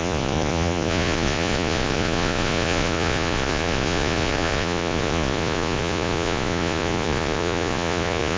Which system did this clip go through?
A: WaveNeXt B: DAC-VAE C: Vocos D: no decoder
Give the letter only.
C